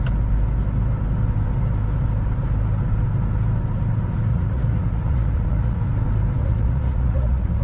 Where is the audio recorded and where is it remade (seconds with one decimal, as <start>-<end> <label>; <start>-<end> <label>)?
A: 0.0-4.3 recorded; 4.3-5.8 remade; 5.8-6.4 recorded; 6.4-7.6 remade